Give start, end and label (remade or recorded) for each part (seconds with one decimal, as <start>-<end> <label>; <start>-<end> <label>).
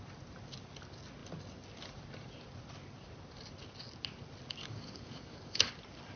0.0-4.6 recorded; 4.6-5.7 remade; 5.7-6.2 recorded